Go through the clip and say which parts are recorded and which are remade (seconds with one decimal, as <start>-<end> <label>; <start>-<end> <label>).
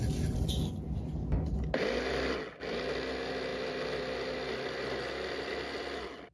0.0-6.3 recorded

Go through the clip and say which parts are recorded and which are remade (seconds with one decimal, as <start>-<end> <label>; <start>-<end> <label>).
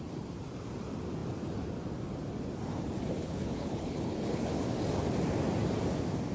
0.0-3.2 recorded; 3.2-4.5 remade; 4.5-6.3 recorded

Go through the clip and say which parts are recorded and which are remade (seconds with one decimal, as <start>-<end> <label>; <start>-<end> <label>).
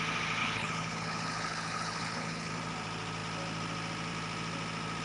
0.0-0.4 recorded; 0.4-2.5 remade; 2.5-5.0 recorded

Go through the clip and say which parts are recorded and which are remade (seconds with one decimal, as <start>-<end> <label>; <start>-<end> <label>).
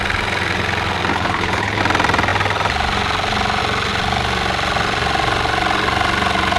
0.0-1.1 recorded; 1.1-1.8 remade; 1.8-6.6 recorded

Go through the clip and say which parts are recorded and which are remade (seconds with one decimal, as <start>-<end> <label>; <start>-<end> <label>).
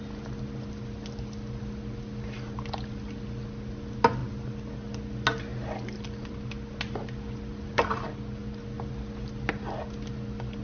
0.0-10.6 recorded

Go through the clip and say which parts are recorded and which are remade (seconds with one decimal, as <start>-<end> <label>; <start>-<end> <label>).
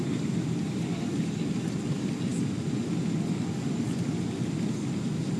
0.0-5.4 recorded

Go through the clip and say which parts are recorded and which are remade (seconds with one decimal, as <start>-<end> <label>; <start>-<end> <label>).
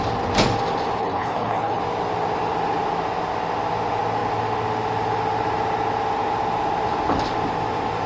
0.0-1.0 recorded; 1.0-1.8 remade; 1.8-8.1 recorded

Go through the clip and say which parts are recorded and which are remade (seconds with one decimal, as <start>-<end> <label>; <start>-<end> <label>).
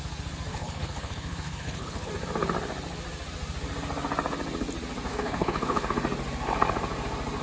0.0-0.5 recorded; 0.5-2.1 remade; 2.1-5.1 recorded; 5.1-5.9 remade; 5.9-7.4 recorded